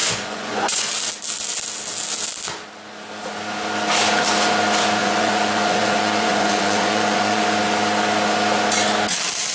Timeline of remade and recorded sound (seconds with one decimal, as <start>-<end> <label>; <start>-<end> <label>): 0.0-0.9 remade; 0.9-5.0 recorded; 5.0-7.4 remade; 7.4-9.5 recorded